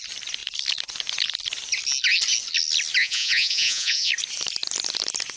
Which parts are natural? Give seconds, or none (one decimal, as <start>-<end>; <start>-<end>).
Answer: 0.0-3.0; 4.1-5.4